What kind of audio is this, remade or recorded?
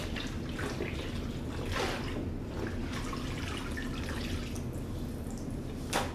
recorded